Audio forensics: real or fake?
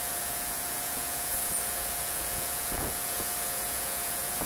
fake